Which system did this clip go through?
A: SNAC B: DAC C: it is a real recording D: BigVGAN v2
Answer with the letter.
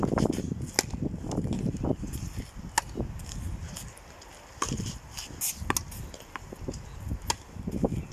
C